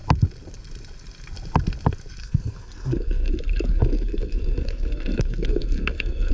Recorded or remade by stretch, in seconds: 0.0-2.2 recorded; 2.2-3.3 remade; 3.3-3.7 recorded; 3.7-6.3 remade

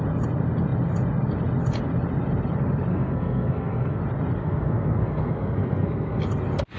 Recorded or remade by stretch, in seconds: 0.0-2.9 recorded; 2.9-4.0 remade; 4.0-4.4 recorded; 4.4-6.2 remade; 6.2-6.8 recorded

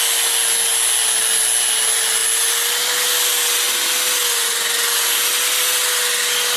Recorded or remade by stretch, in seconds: 0.0-6.6 recorded

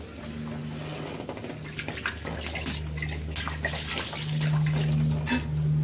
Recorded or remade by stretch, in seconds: 0.0-5.8 recorded

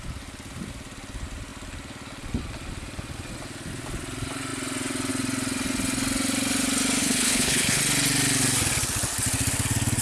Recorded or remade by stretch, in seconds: 0.0-7.0 recorded; 7.0-7.8 remade; 7.8-10.0 recorded